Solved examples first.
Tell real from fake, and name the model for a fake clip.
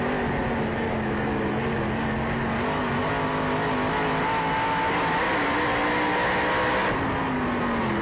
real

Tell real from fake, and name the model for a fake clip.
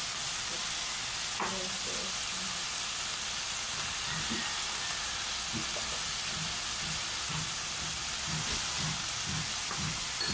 real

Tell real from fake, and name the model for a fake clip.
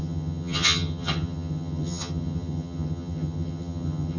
fake, vocoder, HiFi-GAN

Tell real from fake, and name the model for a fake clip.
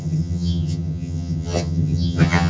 fake, vocoder, HiFi-GAN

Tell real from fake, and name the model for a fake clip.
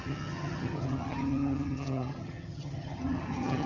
fake, vocoder, HiFi-GAN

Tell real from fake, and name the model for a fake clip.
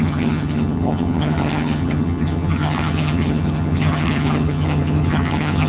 fake, vocoder, HiFi-GAN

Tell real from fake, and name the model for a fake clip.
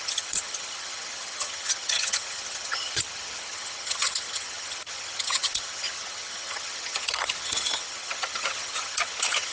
fake, vocoder, HiFi-GAN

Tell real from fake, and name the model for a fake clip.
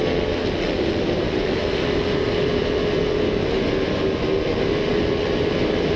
real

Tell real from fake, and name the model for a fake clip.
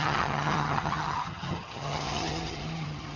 fake, vocoder, HiFi-GAN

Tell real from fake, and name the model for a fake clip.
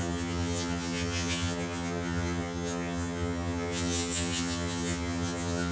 fake, vocoder, HiFi-GAN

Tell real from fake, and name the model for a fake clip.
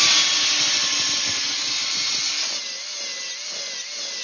real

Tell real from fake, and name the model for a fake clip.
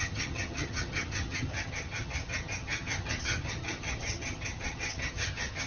fake, vocoder, HiFi-GAN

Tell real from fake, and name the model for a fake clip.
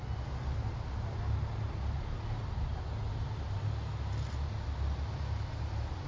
real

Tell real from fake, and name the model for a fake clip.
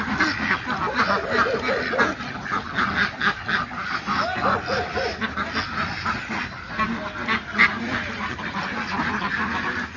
real